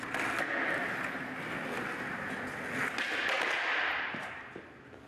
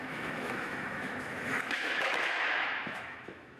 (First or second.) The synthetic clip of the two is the second